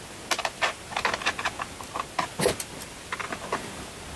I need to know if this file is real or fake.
real